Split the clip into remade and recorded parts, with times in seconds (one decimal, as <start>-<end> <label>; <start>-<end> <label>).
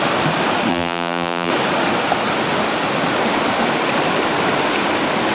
0.0-0.7 recorded; 0.7-1.5 remade; 1.5-5.3 recorded